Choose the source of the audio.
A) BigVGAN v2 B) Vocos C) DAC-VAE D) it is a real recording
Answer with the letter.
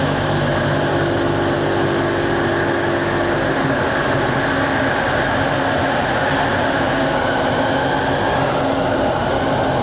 D